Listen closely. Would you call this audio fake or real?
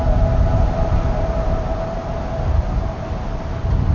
real